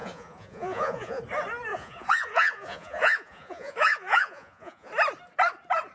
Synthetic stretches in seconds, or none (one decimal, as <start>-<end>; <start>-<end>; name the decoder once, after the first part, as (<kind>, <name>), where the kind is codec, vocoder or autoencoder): 0.0-1.2 (vocoder, Vocos); 1.7-4.9